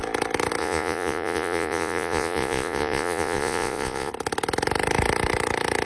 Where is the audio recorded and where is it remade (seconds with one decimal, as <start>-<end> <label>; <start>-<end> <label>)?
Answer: 0.0-0.6 recorded; 0.6-4.1 remade; 4.1-5.9 recorded